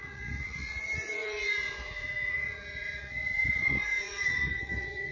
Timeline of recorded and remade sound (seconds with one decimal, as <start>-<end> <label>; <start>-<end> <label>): 0.0-5.1 remade